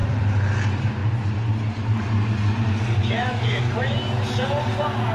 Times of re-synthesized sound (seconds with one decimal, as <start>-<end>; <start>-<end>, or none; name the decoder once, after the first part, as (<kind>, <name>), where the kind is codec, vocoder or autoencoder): 3.0-3.6 (autoencoder, DAC-VAE)